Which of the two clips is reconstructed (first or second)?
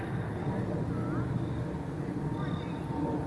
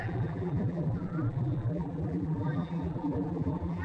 second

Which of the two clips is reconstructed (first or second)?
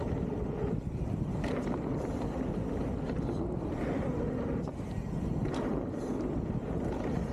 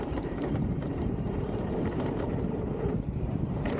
second